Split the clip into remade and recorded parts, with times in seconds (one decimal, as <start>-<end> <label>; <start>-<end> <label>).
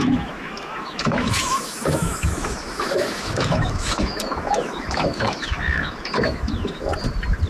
0.0-6.9 remade; 6.9-7.5 recorded